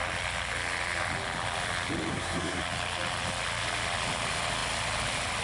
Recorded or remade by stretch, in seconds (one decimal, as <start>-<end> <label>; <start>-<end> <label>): 0.0-2.1 recorded; 2.1-2.6 remade; 2.6-5.4 recorded